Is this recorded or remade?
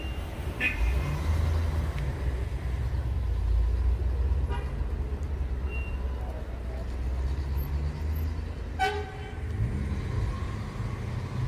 recorded